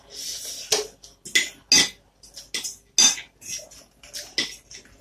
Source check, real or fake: real